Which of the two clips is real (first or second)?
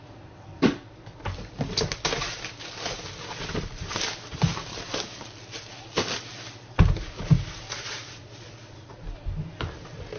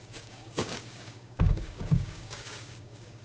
first